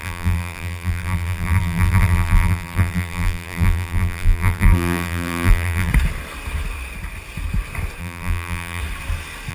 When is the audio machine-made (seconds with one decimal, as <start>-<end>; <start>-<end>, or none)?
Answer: 0.0-5.9; 8.0-8.8